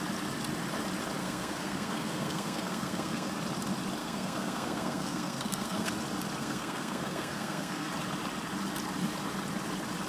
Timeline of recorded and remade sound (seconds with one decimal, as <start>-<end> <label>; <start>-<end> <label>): 0.0-1.2 recorded; 1.2-3.3 remade; 3.3-4.0 recorded; 4.0-5.9 remade; 5.9-6.4 recorded; 6.4-7.9 remade; 7.9-10.1 recorded